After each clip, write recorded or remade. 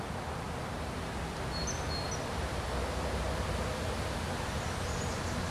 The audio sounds recorded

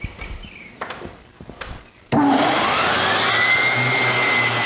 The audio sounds recorded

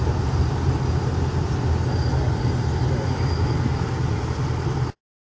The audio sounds recorded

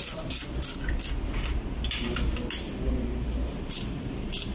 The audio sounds recorded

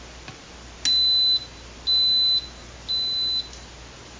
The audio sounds recorded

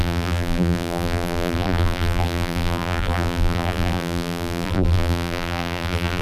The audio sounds remade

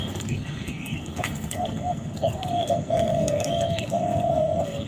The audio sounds remade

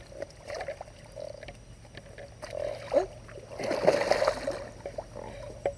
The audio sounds recorded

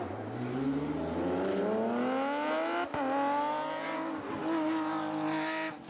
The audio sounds recorded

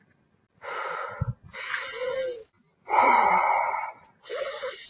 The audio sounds recorded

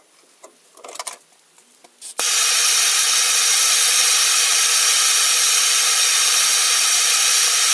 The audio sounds recorded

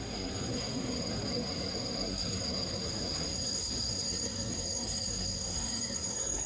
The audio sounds remade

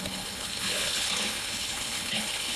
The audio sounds remade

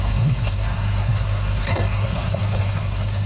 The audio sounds remade